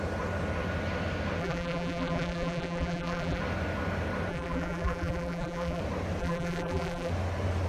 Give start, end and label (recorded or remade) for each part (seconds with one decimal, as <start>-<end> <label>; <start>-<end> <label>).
0.0-1.4 recorded; 1.4-3.4 remade; 3.4-4.3 recorded; 4.3-5.8 remade; 5.8-6.2 recorded; 6.2-7.1 remade; 7.1-7.7 recorded